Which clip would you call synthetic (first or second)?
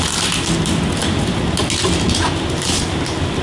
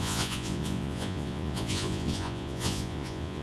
second